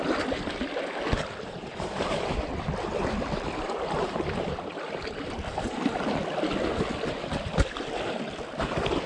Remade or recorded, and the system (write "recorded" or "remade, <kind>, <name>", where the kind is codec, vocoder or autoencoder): recorded